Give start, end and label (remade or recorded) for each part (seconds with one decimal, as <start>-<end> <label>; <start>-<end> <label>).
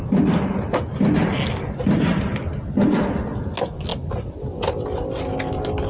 0.0-5.9 recorded